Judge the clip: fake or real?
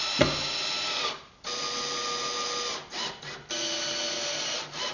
real